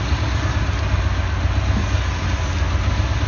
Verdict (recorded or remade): recorded